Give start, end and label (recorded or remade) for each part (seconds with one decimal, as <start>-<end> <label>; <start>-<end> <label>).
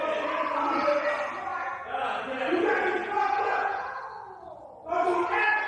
0.0-1.5 recorded; 1.5-2.2 remade; 2.2-3.0 recorded; 3.0-4.0 remade; 4.0-5.7 recorded